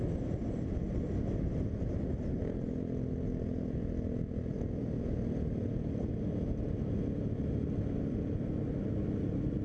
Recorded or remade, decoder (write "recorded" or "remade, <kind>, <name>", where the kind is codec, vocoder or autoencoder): recorded